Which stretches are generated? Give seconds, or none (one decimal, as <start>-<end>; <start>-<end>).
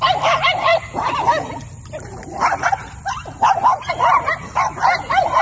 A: none